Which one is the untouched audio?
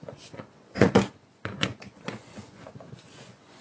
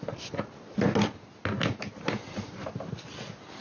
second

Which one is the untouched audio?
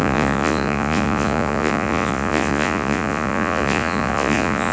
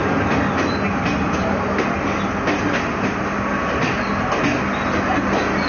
second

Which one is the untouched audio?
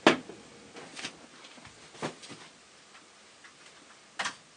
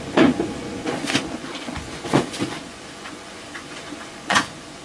first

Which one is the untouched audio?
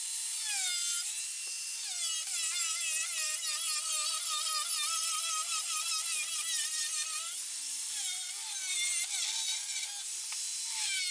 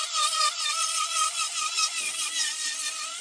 first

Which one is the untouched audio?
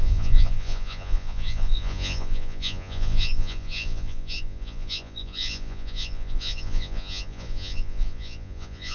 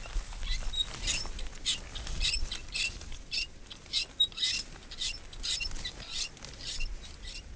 second